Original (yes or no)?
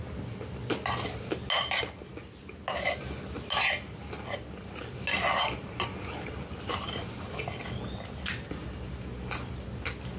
yes